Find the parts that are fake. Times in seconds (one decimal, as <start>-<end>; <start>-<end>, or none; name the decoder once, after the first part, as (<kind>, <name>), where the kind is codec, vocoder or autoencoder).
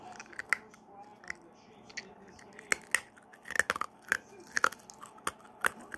none